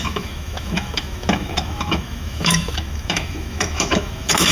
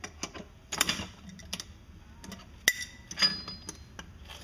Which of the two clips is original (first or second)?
second